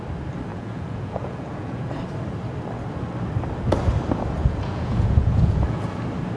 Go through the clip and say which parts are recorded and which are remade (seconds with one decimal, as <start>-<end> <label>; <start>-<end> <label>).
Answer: 0.0-0.5 recorded; 0.5-1.9 remade; 1.9-4.4 recorded; 4.4-6.0 remade; 6.0-6.4 recorded